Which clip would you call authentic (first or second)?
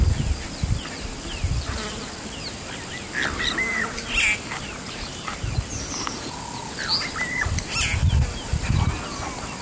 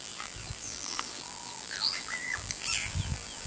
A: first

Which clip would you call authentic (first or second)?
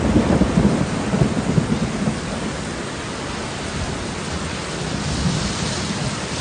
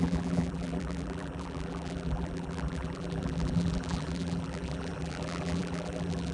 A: first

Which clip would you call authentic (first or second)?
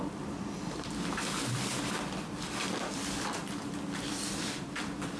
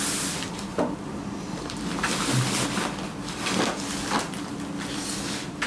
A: second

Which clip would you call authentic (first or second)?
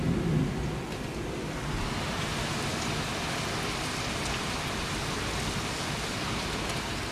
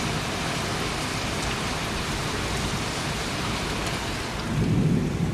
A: first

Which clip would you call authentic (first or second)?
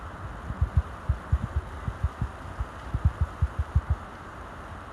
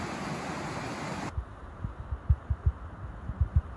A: first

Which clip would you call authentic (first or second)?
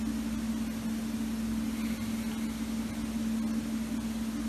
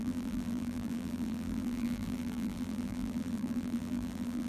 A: first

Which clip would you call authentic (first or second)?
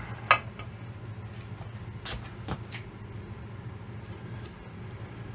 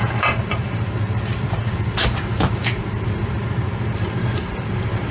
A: first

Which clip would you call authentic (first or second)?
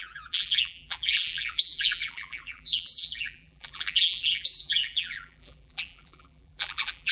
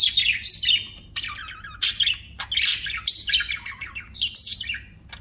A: second